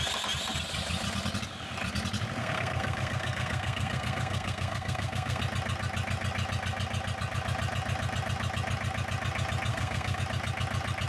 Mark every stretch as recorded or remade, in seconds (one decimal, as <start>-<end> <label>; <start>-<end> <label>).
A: 0.0-2.4 recorded; 2.4-5.4 remade; 5.4-9.7 recorded; 9.7-10.2 remade; 10.2-11.1 recorded